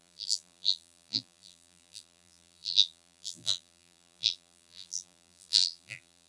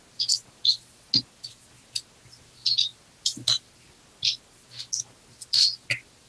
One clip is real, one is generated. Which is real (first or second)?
second